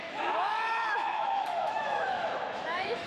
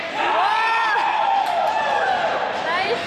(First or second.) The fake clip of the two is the first